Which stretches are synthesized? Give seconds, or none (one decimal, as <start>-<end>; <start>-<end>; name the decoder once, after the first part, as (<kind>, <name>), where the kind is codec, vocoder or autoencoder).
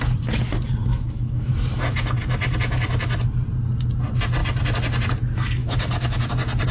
0.8-1.5 (autoencoder, DAC-VAE); 5.6-6.3